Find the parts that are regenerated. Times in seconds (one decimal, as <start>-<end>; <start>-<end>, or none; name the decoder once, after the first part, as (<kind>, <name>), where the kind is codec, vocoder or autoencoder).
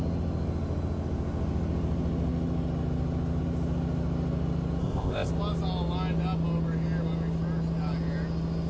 4.8-5.3 (codec, ZipCodec)